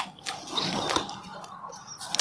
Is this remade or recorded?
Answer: recorded